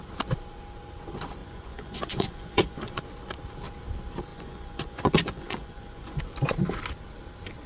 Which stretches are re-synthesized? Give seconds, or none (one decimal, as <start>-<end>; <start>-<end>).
1.4-3.0; 4.3-6.2